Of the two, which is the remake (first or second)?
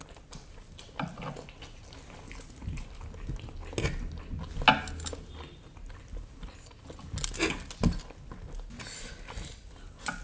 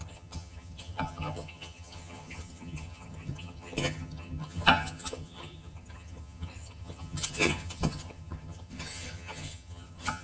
second